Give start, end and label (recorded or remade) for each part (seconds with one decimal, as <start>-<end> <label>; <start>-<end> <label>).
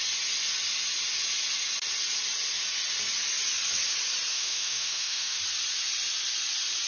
0.0-4.3 recorded; 4.3-5.4 remade; 5.4-6.9 recorded